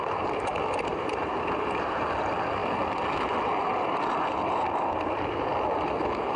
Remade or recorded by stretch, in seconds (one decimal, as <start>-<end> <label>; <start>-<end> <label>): 0.0-0.9 recorded; 0.9-2.0 remade; 2.0-6.4 recorded